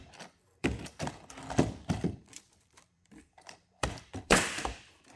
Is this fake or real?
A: fake